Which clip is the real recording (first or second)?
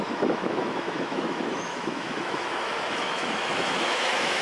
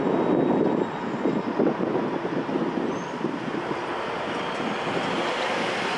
second